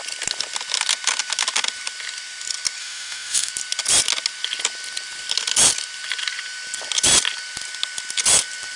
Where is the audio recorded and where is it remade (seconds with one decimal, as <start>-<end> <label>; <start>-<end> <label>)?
0.0-2.8 recorded; 2.8-3.5 remade; 3.5-8.8 recorded

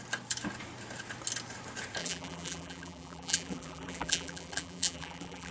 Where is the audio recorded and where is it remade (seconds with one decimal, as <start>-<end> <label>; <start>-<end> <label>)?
0.0-2.0 recorded; 2.0-5.5 remade

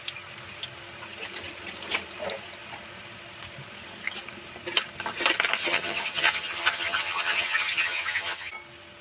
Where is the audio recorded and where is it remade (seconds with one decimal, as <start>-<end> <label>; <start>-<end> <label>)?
0.0-5.6 recorded; 5.6-8.5 remade; 8.5-9.0 recorded

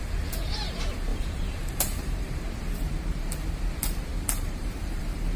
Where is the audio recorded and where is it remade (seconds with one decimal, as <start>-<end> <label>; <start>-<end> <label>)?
0.0-1.1 recorded; 1.1-2.5 remade; 2.5-4.1 recorded; 4.1-5.0 remade; 5.0-5.4 recorded

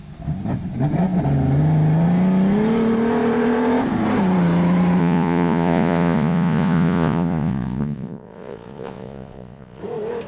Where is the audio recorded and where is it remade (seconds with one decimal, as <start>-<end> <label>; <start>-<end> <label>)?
0.0-5.0 recorded; 5.0-9.8 remade; 9.8-10.3 recorded

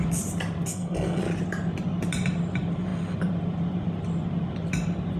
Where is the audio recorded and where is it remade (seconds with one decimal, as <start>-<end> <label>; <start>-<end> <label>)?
0.0-0.7 recorded; 0.7-1.2 remade; 1.2-5.2 recorded

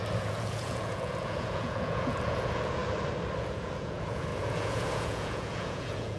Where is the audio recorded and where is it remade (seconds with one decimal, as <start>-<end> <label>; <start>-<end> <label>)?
0.0-2.8 remade; 2.8-3.4 recorded; 3.4-6.2 remade